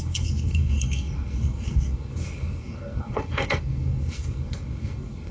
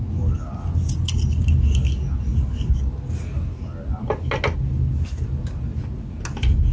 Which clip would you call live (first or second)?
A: second